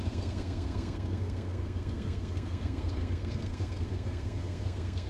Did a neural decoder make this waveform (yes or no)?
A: yes